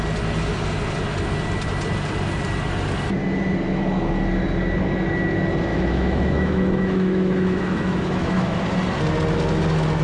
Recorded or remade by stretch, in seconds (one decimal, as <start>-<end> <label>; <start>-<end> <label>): 0.0-5.7 recorded; 5.7-8.6 remade; 8.6-10.0 recorded